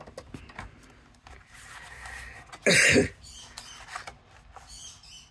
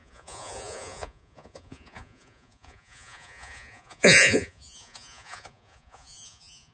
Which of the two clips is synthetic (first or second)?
second